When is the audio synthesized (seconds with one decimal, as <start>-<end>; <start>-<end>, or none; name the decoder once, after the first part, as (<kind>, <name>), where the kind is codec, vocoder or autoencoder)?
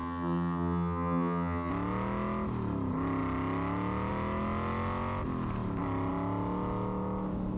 0.0-1.7 (vocoder, HiFi-GAN)